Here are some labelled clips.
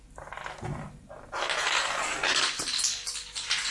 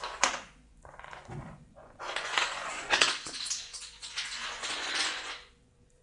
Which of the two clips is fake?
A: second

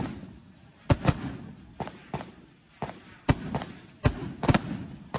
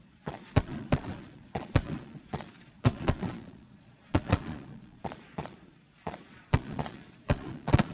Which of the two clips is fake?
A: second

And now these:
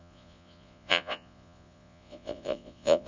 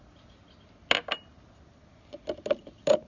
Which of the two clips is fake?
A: first